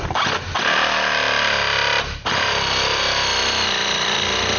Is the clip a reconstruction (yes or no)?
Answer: no